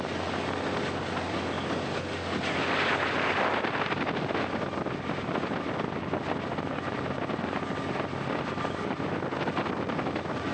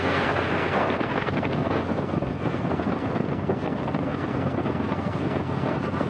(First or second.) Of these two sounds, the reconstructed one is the second